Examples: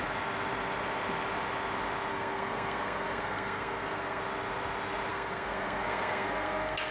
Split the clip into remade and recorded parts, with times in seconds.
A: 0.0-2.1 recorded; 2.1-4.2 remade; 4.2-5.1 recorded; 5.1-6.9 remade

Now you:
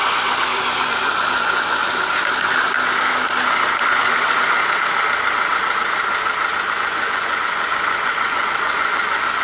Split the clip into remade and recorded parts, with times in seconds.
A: 0.0-1.8 remade; 1.8-3.8 recorded; 3.8-4.6 remade; 4.6-6.7 recorded; 6.7-9.4 remade

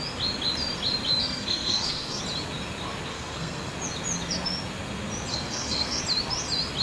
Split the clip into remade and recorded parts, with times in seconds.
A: 0.0-1.2 recorded; 1.2-2.2 remade; 2.2-3.1 recorded; 3.1-3.7 remade; 3.7-5.3 recorded; 5.3-6.0 remade; 6.0-6.8 recorded